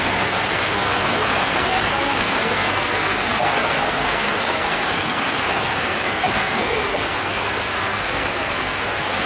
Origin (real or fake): fake